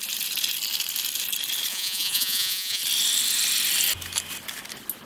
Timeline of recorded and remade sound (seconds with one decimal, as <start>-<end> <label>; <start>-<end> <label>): 0.0-1.7 recorded; 1.7-2.8 remade; 2.8-5.1 recorded